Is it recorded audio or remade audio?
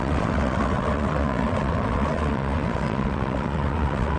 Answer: remade